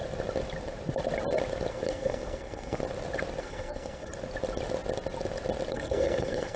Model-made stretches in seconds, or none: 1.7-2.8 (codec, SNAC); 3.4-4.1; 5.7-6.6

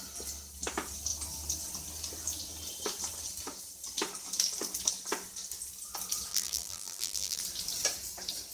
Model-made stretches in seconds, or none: 6.3-7.4 (vocoder, BigVGAN v2)

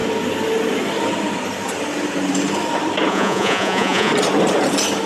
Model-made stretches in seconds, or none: 3.1-4.1 (vocoder, Vocos)

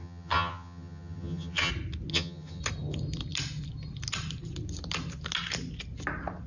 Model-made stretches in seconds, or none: 0.0-1.7 (vocoder, HiFi-GAN); 2.1-2.6

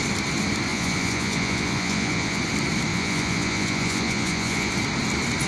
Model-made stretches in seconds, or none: 0.7-2.4 (vocoder, Vocos); 2.9-4.7

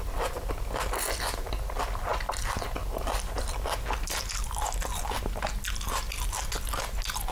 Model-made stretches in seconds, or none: none

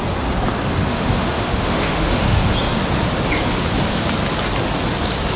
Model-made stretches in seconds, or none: 0.9-2.5 (autoencoder, DAC-VAE)